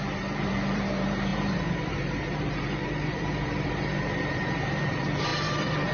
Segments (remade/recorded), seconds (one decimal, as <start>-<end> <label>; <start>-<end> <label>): 0.0-5.9 remade